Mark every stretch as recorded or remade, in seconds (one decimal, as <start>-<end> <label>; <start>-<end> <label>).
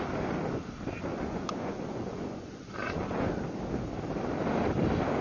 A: 0.0-1.1 recorded; 1.1-3.3 remade; 3.3-5.2 recorded